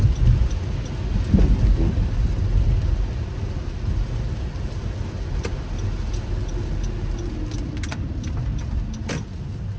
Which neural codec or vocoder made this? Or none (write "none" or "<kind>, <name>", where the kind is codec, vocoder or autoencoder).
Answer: none